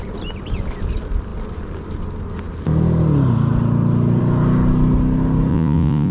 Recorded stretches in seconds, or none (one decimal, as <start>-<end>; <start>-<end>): 0.0-5.5